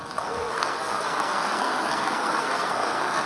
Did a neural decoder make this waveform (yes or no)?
yes